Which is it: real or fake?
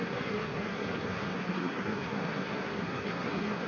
fake